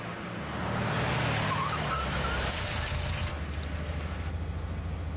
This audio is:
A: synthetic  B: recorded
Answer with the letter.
B